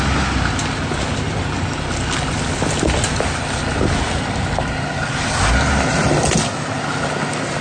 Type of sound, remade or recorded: recorded